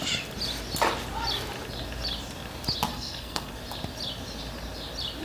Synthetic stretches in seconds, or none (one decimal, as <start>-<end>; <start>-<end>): 2.9-3.5